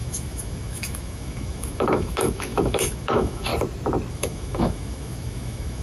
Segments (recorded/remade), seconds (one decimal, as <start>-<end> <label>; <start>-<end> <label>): 0.0-3.5 remade; 3.5-4.1 recorded; 4.1-5.8 remade